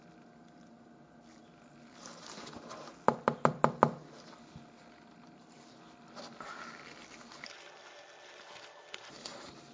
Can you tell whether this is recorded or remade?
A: recorded